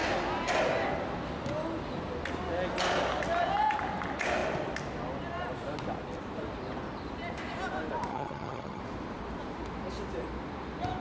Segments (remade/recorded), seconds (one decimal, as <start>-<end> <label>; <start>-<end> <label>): 0.0-8.1 recorded; 8.1-8.8 remade; 8.8-11.0 recorded